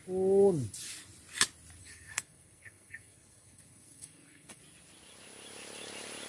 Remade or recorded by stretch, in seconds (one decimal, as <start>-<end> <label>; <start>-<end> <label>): 0.0-1.8 recorded; 1.8-4.6 remade; 4.6-6.3 recorded